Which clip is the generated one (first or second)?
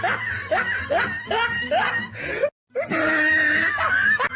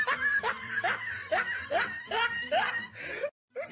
second